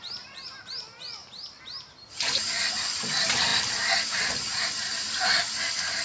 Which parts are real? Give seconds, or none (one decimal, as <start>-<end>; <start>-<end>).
none

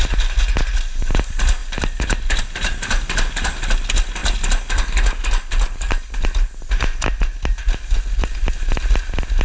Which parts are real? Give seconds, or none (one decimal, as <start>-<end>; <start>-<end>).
0.0-9.4

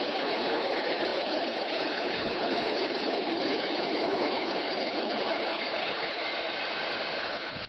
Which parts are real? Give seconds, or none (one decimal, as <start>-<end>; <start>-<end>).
6.2-7.2